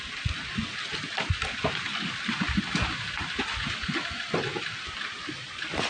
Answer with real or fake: real